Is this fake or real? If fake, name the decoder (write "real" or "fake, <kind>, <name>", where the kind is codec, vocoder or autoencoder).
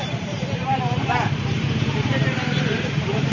fake, vocoder, BigVGAN v2